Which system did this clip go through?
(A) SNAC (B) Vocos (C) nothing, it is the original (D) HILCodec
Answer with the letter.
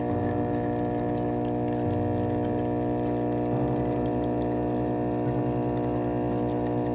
C